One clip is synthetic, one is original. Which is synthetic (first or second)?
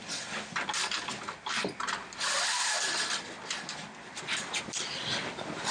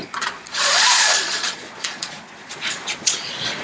second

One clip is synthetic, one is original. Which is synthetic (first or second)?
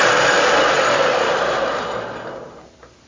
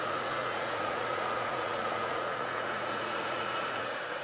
second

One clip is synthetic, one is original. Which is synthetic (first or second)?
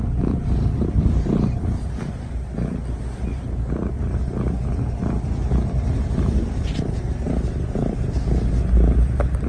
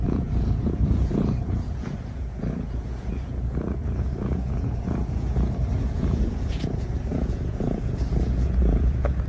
second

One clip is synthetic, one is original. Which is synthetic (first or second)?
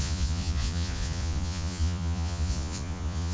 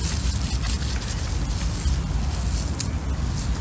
first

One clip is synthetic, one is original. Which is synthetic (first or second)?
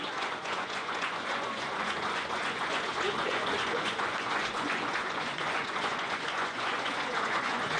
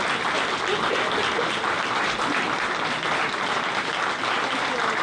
first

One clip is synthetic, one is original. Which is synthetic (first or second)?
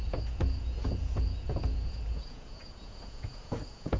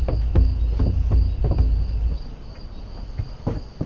first